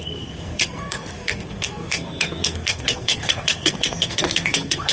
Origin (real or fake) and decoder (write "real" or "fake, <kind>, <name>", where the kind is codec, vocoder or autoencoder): fake, codec, SNAC